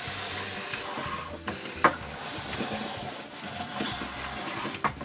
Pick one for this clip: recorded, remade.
recorded